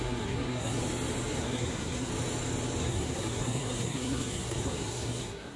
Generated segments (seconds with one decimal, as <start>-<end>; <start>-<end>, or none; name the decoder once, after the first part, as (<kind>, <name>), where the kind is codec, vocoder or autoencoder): 0.0-0.8 (codec, SNAC); 1.4-2.1; 2.8-5.6